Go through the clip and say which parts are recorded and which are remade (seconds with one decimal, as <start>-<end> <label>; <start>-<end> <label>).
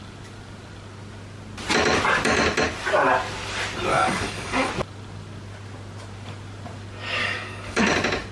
0.0-3.9 recorded; 3.9-4.7 remade; 4.7-7.2 recorded; 7.2-7.8 remade; 7.8-8.3 recorded